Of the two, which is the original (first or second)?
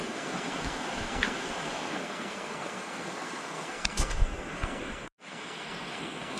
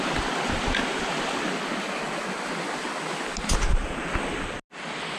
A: second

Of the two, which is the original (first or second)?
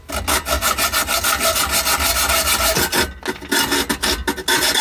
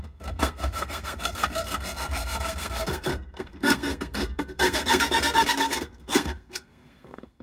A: first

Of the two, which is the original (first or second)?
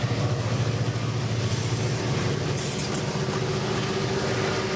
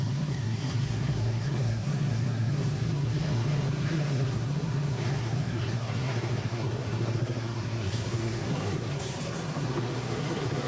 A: first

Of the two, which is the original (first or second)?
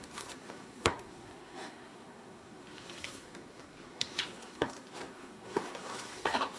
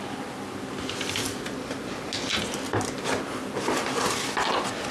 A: second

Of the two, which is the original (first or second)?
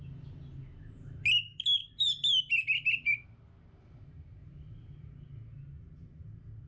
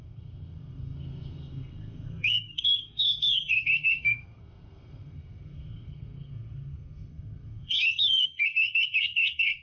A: first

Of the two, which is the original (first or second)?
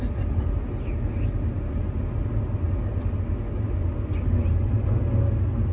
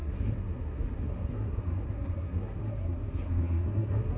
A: first